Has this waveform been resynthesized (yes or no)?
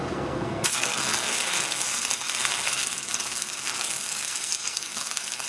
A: yes